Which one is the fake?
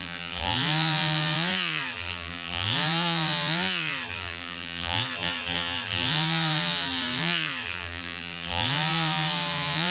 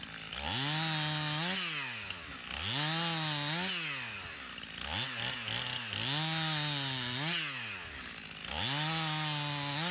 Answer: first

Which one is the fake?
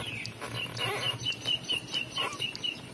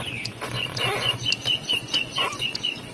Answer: second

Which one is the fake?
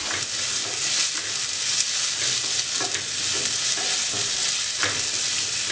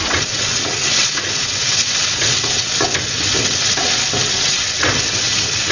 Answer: second